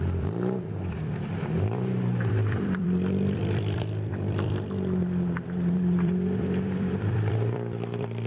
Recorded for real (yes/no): no